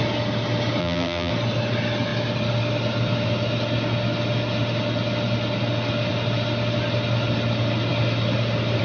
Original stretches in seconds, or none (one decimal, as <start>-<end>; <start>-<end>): 0.0-0.8; 1.3-8.8